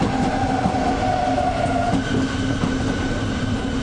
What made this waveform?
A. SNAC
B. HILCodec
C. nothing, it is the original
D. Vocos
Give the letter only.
C